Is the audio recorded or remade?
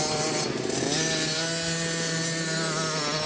recorded